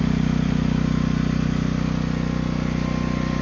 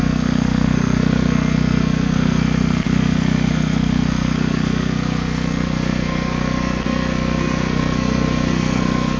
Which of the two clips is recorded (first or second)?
first